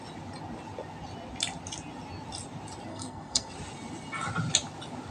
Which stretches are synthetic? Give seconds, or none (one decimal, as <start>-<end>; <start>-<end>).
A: 2.9-3.5

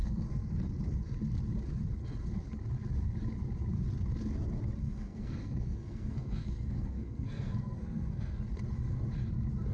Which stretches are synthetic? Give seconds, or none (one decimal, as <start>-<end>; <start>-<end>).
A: 0.0-0.5; 4.8-8.4

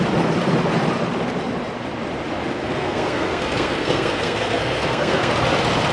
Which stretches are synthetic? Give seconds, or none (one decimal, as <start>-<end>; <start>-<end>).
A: 2.6-5.3

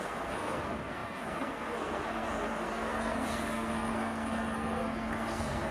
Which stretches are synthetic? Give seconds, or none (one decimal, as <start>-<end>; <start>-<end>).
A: 0.0-5.7